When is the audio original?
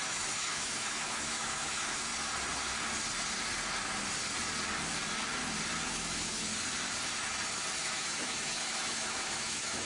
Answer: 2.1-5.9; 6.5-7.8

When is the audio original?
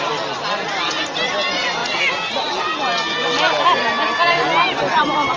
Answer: 0.0-5.4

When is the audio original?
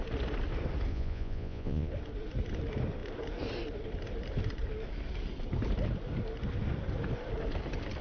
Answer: 0.0-0.9; 1.9-8.0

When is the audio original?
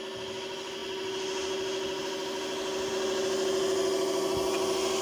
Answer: 0.0-5.0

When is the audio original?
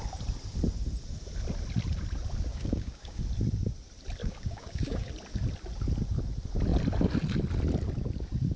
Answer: 0.0-2.5; 3.2-4.2; 5.1-8.6